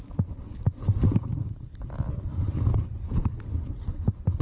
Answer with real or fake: real